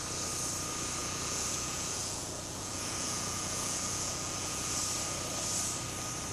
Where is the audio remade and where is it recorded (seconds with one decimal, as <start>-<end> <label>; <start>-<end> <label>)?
0.0-1.0 recorded; 1.0-4.8 remade; 4.8-6.3 recorded